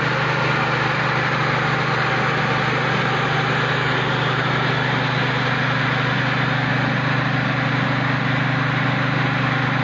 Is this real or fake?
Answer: real